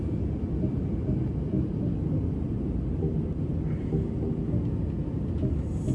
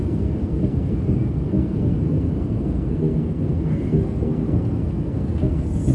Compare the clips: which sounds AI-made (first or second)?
second